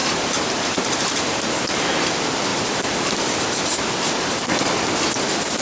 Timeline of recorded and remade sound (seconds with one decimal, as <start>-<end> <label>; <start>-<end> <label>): 0.0-1.4 remade; 1.4-2.5 recorded; 2.5-3.4 remade; 3.4-5.6 recorded